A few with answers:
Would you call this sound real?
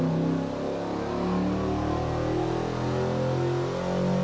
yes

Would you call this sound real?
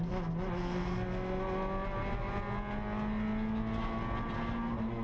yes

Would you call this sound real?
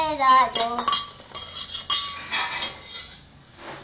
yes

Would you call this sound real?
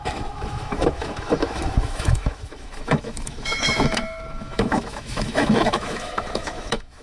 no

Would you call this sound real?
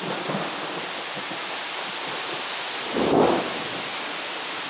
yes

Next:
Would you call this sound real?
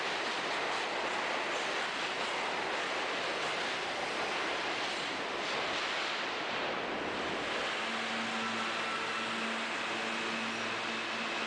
yes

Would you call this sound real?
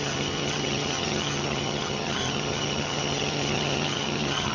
no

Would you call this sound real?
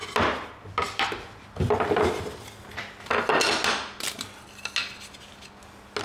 yes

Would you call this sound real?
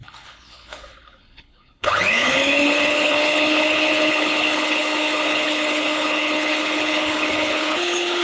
no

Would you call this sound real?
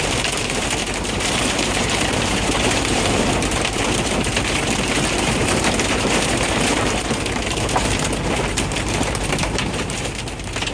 no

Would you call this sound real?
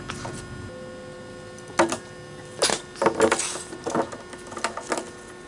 yes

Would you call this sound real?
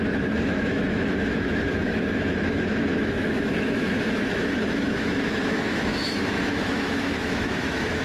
no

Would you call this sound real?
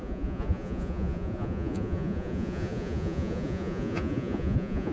no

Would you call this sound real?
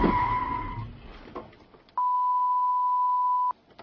yes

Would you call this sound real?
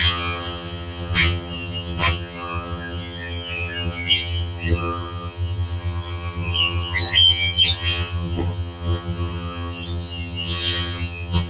no